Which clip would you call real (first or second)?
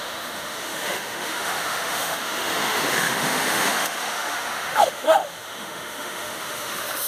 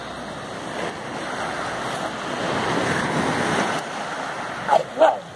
second